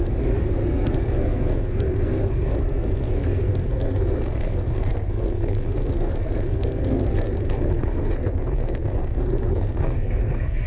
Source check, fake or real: fake